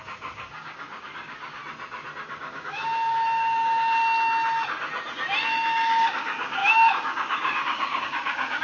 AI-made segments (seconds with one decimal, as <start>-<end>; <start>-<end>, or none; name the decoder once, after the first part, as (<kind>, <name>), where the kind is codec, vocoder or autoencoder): 0.0-1.6 (codec, DAC); 2.3-4.0; 5.5-8.6